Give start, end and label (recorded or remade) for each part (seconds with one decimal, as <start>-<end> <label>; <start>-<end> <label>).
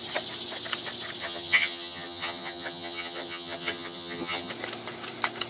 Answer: 0.0-1.2 recorded; 1.2-4.5 remade; 4.5-5.5 recorded